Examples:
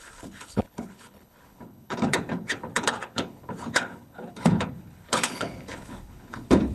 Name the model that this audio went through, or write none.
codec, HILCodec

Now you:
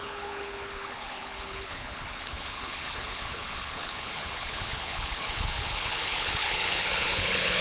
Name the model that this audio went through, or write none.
codec, HILCodec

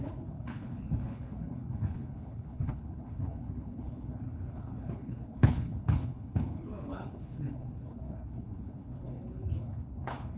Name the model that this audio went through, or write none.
codec, HILCodec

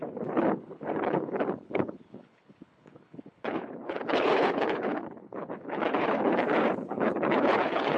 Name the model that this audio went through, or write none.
codec, HILCodec